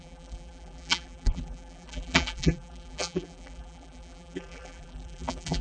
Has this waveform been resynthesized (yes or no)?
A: yes